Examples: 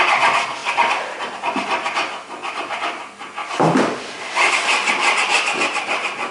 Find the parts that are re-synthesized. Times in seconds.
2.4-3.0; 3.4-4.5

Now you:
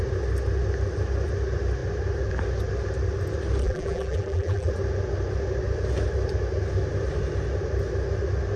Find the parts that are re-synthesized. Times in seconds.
3.6-4.7

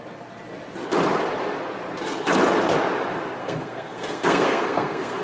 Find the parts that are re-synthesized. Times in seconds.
3.4-5.2

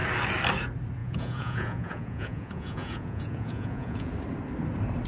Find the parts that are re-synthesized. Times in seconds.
1.0-4.1

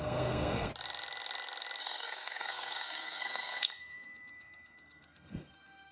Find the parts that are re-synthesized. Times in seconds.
0.0-0.7; 1.8-5.9

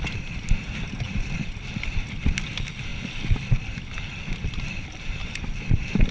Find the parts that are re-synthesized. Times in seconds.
none

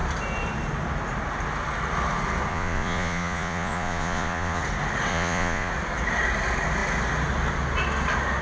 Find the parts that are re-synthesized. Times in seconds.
2.5-4.6; 5.1-5.7